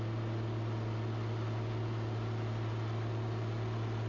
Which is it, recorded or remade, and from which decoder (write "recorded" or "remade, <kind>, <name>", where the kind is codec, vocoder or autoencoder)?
recorded